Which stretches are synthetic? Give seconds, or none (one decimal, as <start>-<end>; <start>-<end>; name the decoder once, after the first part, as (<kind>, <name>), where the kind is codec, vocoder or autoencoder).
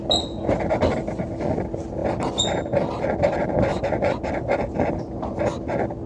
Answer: 3.7-4.2 (vocoder, Vocos)